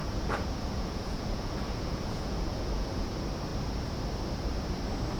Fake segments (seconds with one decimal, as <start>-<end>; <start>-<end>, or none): 0.0-3.1